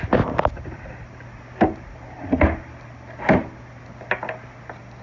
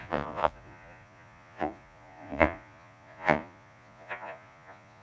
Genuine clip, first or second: first